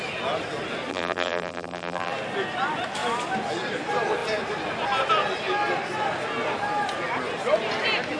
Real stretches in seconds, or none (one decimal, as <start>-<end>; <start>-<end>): 0.0-0.9; 2.1-8.2